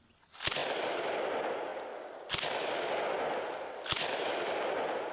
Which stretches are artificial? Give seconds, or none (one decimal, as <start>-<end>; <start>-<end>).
none